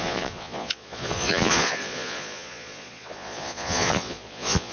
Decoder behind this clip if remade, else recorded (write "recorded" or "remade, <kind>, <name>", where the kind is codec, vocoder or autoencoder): remade, vocoder, Vocos